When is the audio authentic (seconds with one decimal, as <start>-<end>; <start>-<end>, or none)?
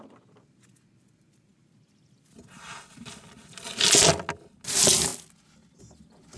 0.0-6.4